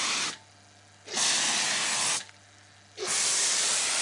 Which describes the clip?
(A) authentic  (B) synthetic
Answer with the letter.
A